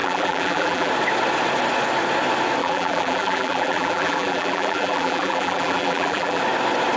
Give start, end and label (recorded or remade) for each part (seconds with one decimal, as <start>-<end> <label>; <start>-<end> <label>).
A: 0.0-0.9 remade; 0.9-2.6 recorded; 2.6-6.4 remade; 6.4-7.0 recorded